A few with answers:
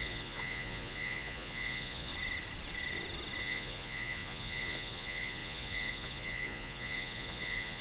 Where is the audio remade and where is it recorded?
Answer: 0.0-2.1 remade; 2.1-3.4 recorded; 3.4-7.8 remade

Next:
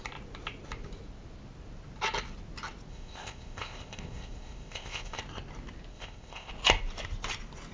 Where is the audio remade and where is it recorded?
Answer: 0.0-2.9 recorded; 2.9-5.2 remade; 5.2-5.9 recorded; 5.9-6.5 remade; 6.5-7.7 recorded

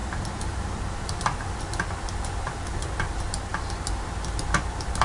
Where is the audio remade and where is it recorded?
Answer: 0.0-3.0 remade; 3.0-5.0 recorded

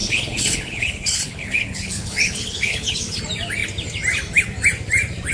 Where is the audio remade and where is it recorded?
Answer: 0.0-3.2 remade; 3.2-5.3 recorded

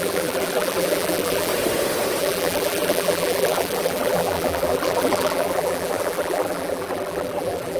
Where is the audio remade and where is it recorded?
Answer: 0.0-1.5 remade; 1.5-2.2 recorded; 2.2-7.8 remade

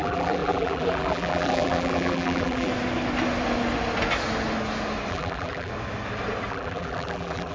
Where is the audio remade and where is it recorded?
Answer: 0.0-2.7 remade; 2.7-5.1 recorded; 5.1-5.7 remade; 5.7-6.5 recorded; 6.5-7.5 remade